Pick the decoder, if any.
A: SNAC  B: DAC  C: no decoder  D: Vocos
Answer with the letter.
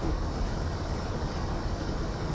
B